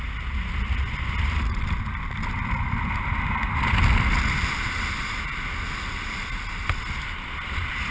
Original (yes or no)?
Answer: yes